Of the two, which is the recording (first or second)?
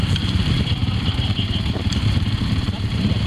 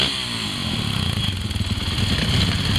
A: second